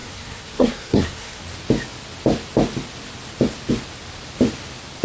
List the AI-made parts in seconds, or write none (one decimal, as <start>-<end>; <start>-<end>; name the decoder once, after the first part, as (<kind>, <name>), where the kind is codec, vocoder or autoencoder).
0.0-1.4 (codec, SNAC)

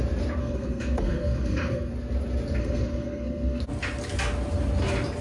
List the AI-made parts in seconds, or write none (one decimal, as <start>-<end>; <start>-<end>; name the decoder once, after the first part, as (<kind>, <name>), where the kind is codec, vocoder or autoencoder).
0.4-1.9 (codec, SNAC); 2.6-3.6

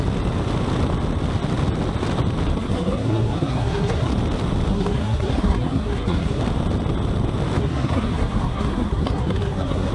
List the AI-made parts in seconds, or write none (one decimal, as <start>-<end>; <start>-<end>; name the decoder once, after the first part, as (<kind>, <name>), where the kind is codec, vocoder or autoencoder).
2.6-4.1 (codec, SNAC); 4.7-6.4; 7.6-9.9

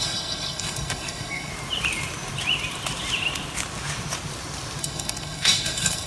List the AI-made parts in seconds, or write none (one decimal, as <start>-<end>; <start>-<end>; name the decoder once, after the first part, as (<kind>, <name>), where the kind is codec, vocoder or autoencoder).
0.0-1.5 (codec, SNAC); 4.8-6.1

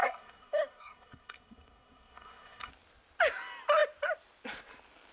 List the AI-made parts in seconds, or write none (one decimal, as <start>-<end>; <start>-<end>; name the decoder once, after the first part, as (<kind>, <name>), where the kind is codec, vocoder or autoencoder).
0.0-2.7 (codec, SNAC)

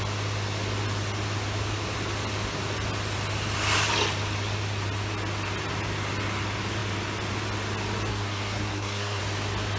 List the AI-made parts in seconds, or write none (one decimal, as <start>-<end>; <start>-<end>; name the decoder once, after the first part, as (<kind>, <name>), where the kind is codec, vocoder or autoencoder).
8.1-9.2 (codec, SNAC)

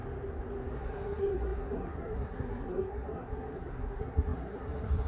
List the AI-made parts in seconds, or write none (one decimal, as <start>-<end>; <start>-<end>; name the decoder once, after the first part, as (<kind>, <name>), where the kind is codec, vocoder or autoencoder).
0.7-5.1 (codec, SNAC)

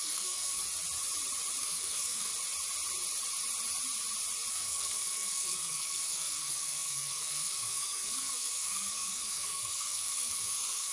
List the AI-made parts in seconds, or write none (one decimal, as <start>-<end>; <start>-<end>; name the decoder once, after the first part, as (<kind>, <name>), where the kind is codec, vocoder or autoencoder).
0.0-0.6 (codec, SNAC); 1.6-2.3; 4.5-10.9